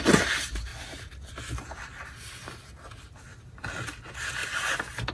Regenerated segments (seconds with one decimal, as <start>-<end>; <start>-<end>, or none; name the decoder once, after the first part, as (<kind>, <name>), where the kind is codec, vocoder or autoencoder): none